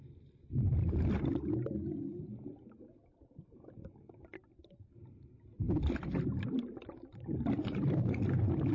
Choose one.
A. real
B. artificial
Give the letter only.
A